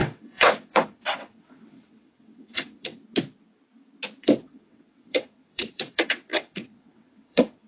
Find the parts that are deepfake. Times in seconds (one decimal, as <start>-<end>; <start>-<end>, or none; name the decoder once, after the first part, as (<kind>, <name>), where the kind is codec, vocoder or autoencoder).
0.0-3.0 (vocoder, WaveNeXt); 4.2-7.7